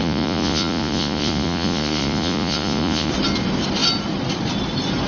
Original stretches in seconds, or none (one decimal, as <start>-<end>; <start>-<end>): 3.1-5.1